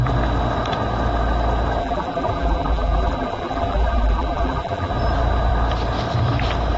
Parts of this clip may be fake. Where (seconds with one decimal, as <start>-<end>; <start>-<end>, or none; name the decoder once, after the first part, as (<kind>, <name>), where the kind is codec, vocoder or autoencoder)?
1.8-4.9 (vocoder, BigVGAN v2)